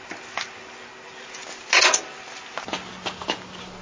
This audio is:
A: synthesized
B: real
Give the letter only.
B